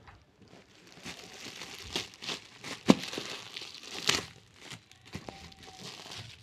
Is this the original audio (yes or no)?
yes